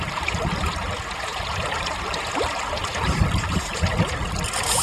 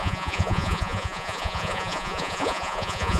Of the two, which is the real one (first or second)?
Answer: first